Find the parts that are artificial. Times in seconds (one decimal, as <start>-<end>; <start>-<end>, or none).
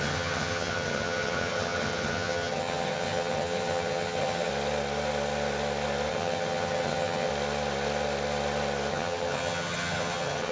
0.0-4.5; 6.1-7.3; 8.9-10.5